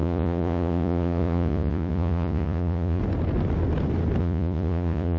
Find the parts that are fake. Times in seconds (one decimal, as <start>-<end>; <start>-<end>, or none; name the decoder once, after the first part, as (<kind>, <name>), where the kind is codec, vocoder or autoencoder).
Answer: 0.0-3.0 (vocoder, Vocos); 4.2-5.2